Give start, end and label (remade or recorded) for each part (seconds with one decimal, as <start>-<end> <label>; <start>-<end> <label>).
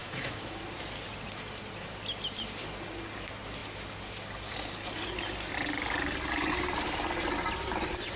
0.0-0.6 remade; 0.6-8.2 recorded